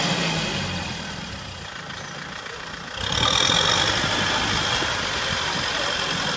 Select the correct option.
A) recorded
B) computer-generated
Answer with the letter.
A